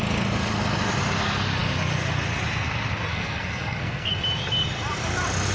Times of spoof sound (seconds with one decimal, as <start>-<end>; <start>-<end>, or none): 3.1-4.1